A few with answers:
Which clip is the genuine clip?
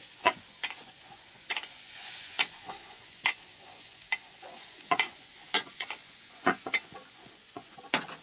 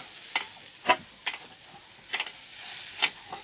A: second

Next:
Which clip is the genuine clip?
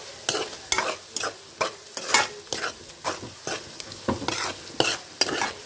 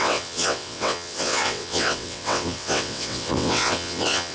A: first